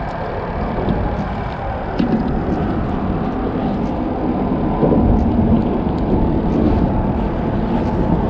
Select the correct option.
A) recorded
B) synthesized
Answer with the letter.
A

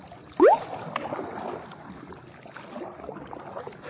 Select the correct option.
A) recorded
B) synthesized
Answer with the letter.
A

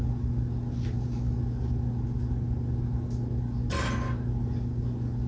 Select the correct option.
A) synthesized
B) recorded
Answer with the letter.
B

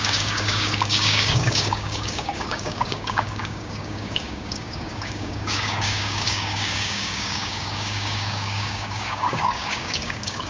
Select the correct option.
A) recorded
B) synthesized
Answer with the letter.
B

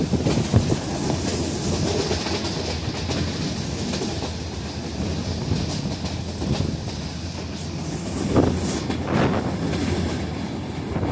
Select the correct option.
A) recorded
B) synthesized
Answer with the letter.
A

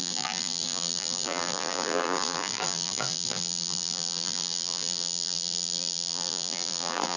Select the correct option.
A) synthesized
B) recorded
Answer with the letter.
A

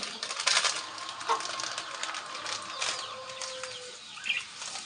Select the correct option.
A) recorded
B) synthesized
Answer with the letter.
A